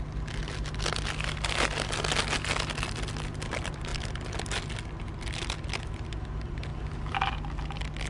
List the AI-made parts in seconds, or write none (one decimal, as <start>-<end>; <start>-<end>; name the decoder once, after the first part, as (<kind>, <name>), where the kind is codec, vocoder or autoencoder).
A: none